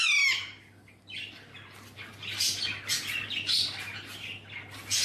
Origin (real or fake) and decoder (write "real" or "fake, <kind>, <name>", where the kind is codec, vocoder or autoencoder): real